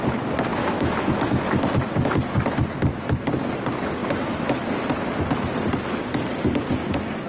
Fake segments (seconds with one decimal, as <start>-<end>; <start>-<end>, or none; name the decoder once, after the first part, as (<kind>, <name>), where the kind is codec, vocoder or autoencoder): 0.5-1.2 (autoencoder, DAC-VAE); 2.9-3.5